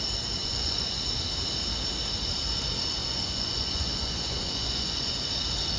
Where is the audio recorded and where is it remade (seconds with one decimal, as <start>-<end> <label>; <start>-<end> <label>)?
0.0-0.4 recorded; 0.4-1.0 remade; 1.0-3.0 recorded; 3.0-5.2 remade; 5.2-5.8 recorded